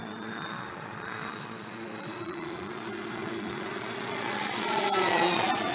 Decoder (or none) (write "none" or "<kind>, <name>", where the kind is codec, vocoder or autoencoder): vocoder, Vocos